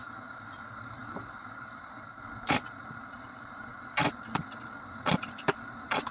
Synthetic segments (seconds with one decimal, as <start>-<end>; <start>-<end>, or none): 0.0-6.1